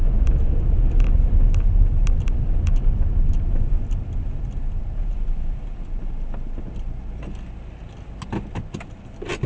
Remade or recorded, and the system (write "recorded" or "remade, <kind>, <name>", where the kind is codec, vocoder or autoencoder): recorded